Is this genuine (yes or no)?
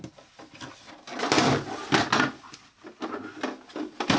yes